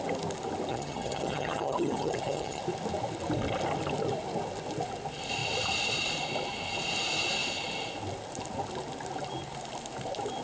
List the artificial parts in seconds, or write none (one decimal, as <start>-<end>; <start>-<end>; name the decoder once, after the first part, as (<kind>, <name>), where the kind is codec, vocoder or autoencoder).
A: 0.7-2.6 (vocoder, HiFi-GAN)